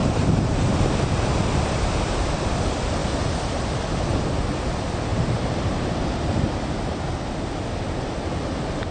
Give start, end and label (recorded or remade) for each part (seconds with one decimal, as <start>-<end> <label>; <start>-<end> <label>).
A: 0.0-0.9 remade; 0.9-5.1 recorded; 5.1-5.9 remade; 5.9-8.9 recorded